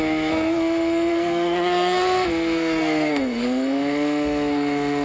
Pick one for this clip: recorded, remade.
remade